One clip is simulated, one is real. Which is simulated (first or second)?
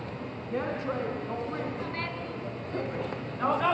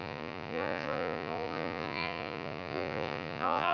second